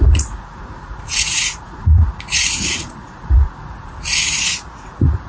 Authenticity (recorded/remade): remade